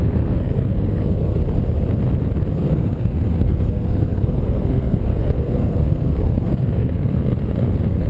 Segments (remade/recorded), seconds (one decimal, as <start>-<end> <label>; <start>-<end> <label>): 0.0-1.4 remade; 1.4-2.5 recorded; 2.5-8.1 remade